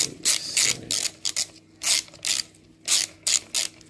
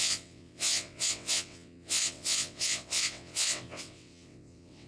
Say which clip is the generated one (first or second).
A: second